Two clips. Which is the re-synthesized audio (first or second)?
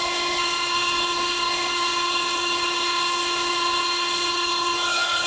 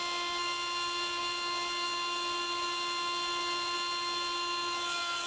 first